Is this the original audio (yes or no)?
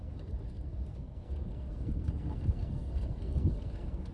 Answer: no